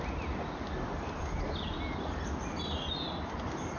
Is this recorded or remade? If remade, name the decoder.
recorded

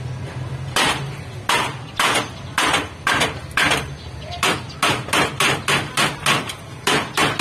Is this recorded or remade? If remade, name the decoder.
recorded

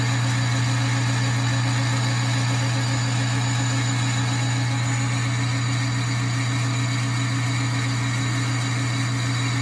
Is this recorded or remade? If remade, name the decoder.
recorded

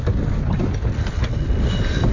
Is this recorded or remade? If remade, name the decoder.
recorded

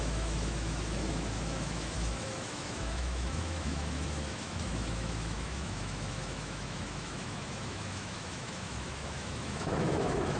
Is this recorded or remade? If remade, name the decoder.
remade, autoencoder, DAC-VAE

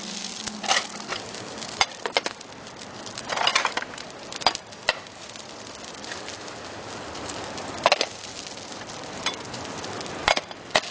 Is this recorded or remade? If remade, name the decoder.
recorded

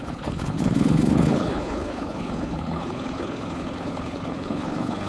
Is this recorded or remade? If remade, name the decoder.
remade, codec, HILCodec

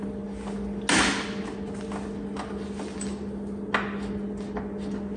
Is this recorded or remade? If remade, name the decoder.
recorded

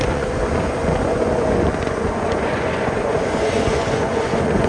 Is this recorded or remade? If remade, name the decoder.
remade, vocoder, Vocos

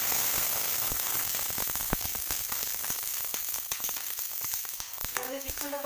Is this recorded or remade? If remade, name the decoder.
remade, codec, SNAC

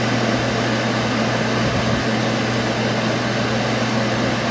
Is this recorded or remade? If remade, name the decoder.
recorded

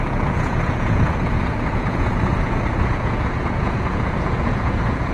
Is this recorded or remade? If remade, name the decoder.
remade, vocoder, Vocos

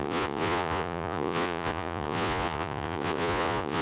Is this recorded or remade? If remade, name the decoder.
remade, vocoder, Vocos